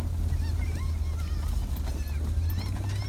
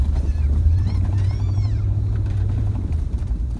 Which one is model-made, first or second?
second